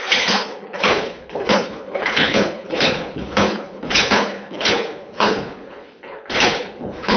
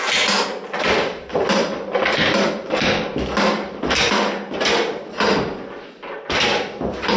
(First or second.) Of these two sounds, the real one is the second